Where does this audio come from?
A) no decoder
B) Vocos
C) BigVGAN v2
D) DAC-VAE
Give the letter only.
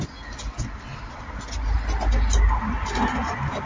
A